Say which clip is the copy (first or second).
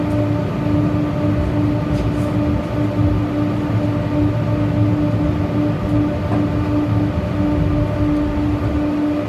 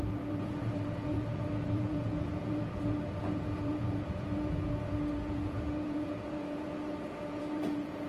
second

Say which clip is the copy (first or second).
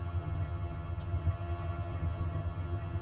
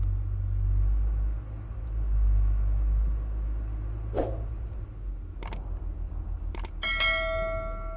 first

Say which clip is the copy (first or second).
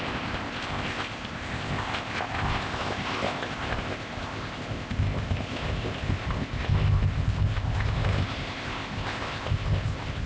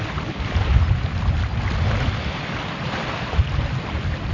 first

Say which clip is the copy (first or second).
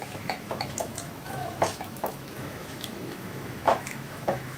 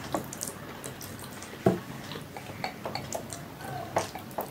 first